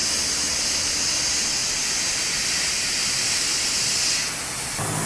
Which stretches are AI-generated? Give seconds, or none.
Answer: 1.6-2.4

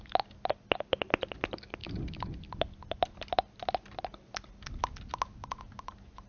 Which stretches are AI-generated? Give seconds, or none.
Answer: none

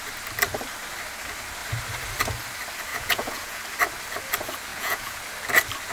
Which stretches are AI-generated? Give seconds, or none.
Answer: 2.9-3.6; 4.7-5.2

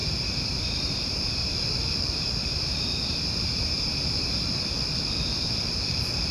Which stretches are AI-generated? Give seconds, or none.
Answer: 0.0-1.5; 2.5-4.7